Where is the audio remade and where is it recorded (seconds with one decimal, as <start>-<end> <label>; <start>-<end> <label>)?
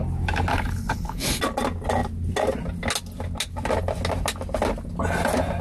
0.0-0.5 recorded; 0.5-1.4 remade; 1.4-5.6 recorded